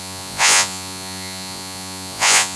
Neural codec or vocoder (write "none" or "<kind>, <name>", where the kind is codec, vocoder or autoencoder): vocoder, Vocos